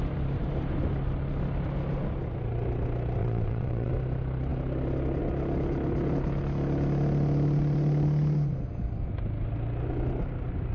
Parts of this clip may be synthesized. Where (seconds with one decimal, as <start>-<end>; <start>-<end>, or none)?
3.2-3.9